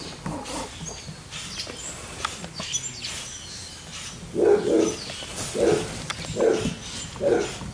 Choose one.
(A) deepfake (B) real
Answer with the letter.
B